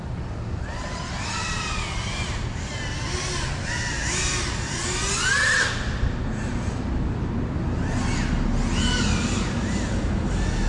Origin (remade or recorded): recorded